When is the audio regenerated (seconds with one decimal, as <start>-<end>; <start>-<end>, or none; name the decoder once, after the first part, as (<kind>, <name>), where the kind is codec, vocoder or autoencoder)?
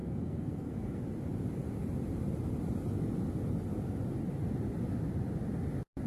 0.0-1.0 (codec, SNAC)